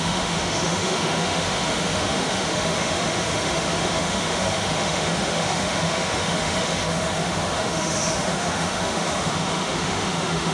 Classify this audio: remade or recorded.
remade